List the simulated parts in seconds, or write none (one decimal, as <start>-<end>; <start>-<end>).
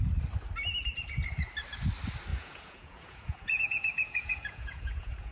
2.3-5.3